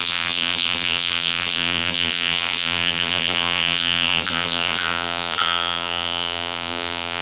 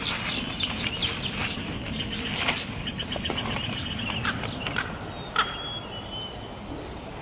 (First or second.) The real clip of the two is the second